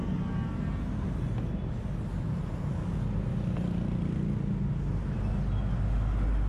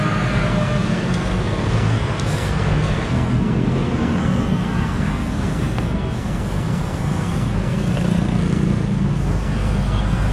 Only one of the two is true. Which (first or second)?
first